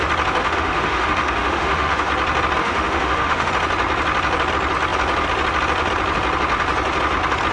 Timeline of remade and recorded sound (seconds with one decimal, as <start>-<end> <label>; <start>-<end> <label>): 0.0-0.4 recorded; 0.4-2.1 remade; 2.1-2.6 recorded; 2.6-3.5 remade; 3.5-7.5 recorded